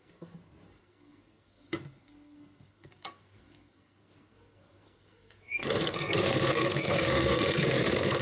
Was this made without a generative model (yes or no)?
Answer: no